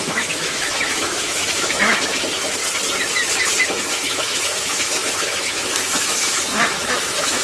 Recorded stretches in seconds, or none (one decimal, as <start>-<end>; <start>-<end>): 2.6-3.6